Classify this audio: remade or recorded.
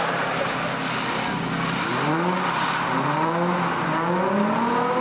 recorded